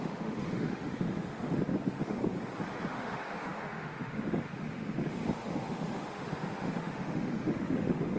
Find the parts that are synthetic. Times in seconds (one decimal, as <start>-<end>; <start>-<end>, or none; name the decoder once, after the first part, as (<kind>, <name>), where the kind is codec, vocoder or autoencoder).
0.0-2.2 (autoencoder, DAC-VAE); 2.9-8.2